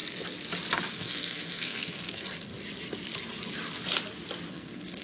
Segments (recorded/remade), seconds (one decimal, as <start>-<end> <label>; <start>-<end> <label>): 0.0-0.9 recorded; 0.9-2.5 remade; 2.5-4.5 recorded; 4.5-5.0 remade